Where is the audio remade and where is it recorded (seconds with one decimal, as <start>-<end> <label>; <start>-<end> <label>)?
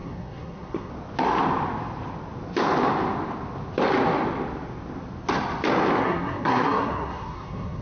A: 0.0-0.9 remade; 0.9-6.0 recorded; 6.0-7.8 remade